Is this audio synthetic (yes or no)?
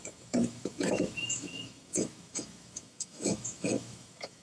yes